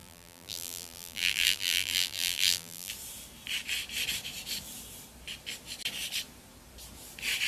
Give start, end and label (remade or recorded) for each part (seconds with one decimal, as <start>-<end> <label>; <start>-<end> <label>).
0.0-2.9 remade; 2.9-7.5 recorded